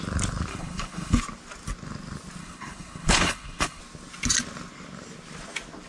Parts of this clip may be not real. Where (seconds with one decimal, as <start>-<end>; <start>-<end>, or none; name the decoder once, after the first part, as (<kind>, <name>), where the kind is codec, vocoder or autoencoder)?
0.5-1.2 (codec, HILCodec); 2.4-3.8